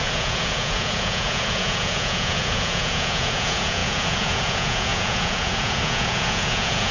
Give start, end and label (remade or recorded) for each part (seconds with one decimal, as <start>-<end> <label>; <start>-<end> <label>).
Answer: 0.0-6.9 remade